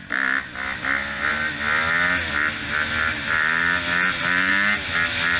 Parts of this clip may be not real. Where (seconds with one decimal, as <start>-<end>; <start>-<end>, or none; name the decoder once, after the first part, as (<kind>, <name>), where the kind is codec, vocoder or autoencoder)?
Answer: none